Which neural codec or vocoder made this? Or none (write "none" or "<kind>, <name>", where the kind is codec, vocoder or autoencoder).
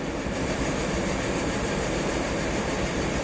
vocoder, BigVGAN v2